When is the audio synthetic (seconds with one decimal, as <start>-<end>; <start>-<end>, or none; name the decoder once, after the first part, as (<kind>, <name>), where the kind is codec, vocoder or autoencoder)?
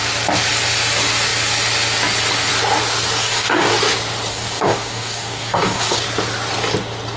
3.2-3.7 (codec, DAC); 4.3-6.0